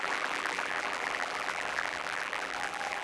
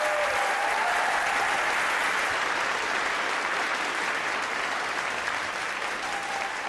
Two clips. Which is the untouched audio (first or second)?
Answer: second